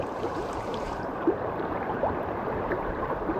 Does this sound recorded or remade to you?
remade